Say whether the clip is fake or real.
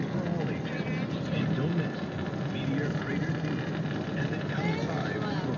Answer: real